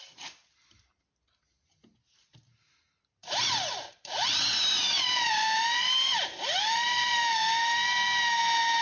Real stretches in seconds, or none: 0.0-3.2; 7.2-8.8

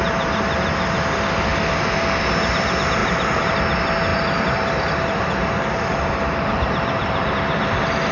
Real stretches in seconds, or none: 0.0-3.0; 3.6-4.1; 7.3-8.1

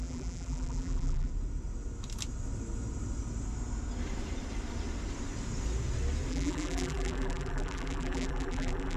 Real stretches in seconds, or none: 1.3-6.3

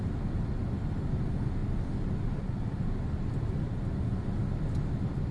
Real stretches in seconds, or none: 0.0-5.3

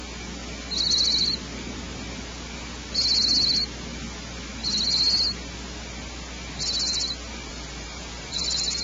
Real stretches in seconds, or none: 0.0-7.5; 8.4-8.8